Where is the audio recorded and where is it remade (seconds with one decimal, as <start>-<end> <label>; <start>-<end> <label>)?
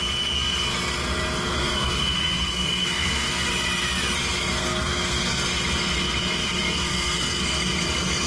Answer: 0.0-1.5 recorded; 1.5-3.5 remade; 3.5-4.6 recorded; 4.6-5.4 remade; 5.4-6.4 recorded; 6.4-7.4 remade; 7.4-8.3 recorded